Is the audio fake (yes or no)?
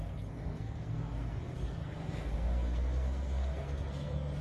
yes